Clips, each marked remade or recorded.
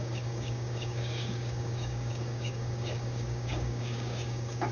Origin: remade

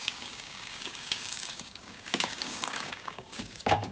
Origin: remade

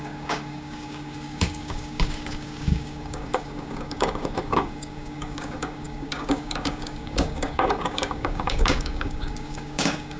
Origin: remade